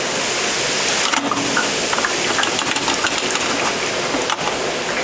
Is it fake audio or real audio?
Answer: real